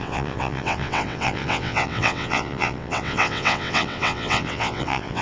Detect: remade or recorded remade